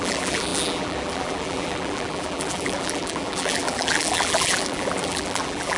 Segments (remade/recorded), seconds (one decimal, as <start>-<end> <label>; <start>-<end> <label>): 0.0-5.8 remade